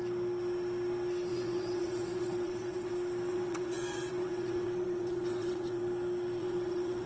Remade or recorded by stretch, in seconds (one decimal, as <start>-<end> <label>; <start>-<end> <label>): 0.0-1.3 recorded; 1.3-2.9 remade; 2.9-3.3 recorded; 3.3-5.8 remade; 5.8-6.4 recorded; 6.4-7.1 remade